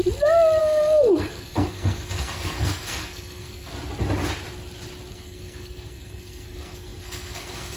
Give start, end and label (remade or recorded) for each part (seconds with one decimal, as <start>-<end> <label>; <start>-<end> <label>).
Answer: 0.0-0.6 recorded; 0.6-3.7 remade; 3.7-5.1 recorded; 5.1-7.8 remade